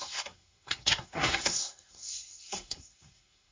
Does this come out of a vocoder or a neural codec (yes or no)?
yes